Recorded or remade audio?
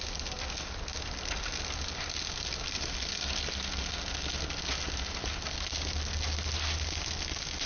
recorded